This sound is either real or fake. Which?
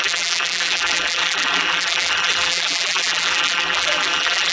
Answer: fake